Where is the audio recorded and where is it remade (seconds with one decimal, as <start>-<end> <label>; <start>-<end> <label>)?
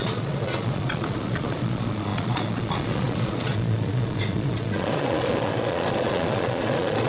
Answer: 0.0-7.1 remade